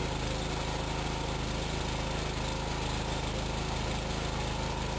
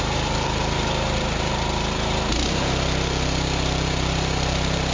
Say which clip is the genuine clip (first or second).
first